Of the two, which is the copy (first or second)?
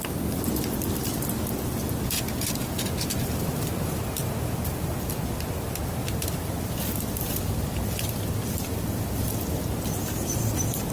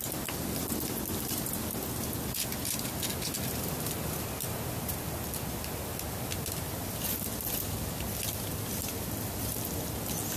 first